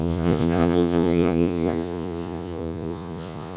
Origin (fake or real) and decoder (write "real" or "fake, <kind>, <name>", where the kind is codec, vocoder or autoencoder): fake, vocoder, Vocos